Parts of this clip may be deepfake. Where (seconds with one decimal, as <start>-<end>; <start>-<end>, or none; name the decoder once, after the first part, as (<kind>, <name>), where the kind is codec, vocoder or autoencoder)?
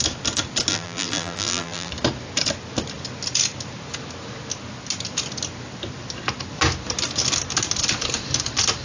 0.7-1.9 (vocoder, BigVGAN v2)